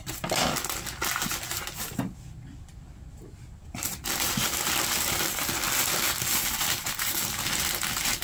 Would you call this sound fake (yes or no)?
no